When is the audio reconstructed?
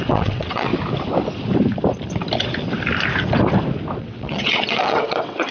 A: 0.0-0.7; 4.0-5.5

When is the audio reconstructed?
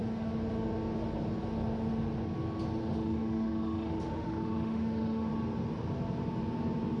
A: 2.8-5.3